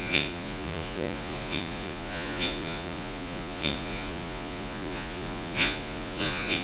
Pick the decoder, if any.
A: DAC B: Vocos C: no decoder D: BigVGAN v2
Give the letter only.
B